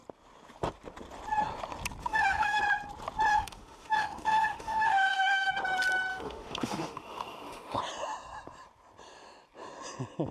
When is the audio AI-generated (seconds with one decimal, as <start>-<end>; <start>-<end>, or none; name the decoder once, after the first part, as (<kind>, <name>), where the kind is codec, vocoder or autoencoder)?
2.0-2.6 (autoencoder, DAC-VAE); 3.3-5.5; 6.1-7.8